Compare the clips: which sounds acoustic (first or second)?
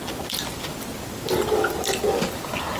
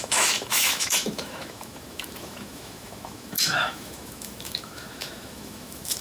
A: first